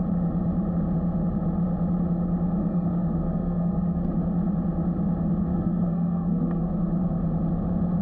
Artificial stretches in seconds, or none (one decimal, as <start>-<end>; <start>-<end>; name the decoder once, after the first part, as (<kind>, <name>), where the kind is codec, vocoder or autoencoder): 2.6-4.1 (codec, SNAC); 5.5-6.6